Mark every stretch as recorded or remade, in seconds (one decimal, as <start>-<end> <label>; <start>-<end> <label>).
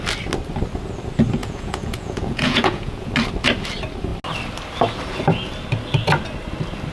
0.0-1.4 recorded; 1.4-3.1 remade; 3.1-6.9 recorded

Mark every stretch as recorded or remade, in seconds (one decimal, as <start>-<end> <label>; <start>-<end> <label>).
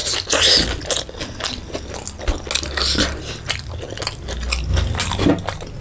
0.0-5.8 recorded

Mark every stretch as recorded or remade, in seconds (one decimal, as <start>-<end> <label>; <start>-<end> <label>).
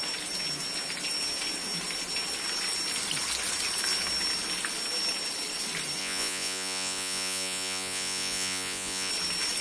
0.0-6.0 recorded; 6.0-9.1 remade; 9.1-9.6 recorded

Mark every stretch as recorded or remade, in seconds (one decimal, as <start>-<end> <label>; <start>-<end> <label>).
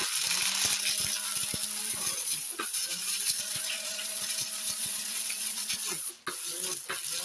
0.0-1.8 recorded; 1.8-6.1 remade; 6.1-7.2 recorded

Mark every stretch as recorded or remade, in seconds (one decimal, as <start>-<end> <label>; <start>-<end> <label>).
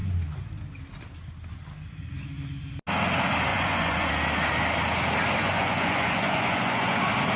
0.0-3.5 recorded; 3.5-4.1 remade; 4.1-5.4 recorded; 5.4-7.0 remade; 7.0-7.4 recorded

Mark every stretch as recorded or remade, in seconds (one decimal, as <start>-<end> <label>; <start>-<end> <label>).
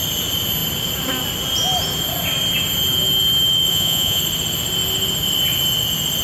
0.0-3.7 recorded; 3.7-4.2 remade; 4.2-6.2 recorded